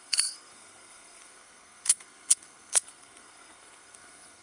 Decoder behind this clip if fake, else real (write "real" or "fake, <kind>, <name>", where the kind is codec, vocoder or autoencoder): fake, codec, SNAC